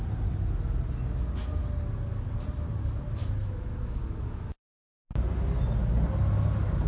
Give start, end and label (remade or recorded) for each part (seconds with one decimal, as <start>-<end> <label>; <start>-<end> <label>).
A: 0.0-3.2 recorded; 3.2-4.6 remade; 4.6-6.9 recorded